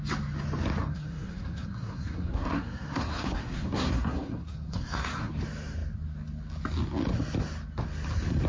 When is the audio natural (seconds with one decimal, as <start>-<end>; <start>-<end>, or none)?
0.0-0.8; 5.3-8.5